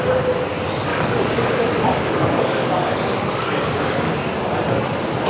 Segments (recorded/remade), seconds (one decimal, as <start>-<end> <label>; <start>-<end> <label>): 0.0-0.9 recorded; 0.9-4.1 remade; 4.1-5.3 recorded